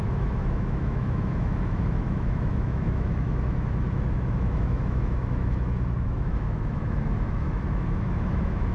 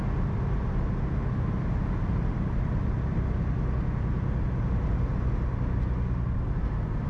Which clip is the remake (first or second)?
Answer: first